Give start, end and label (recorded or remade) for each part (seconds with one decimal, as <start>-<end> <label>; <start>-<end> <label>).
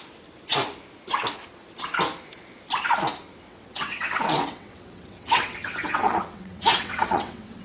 0.0-3.5 recorded; 3.5-7.6 remade